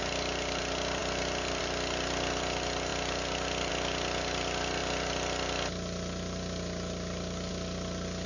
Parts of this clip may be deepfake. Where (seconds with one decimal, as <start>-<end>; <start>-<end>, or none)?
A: none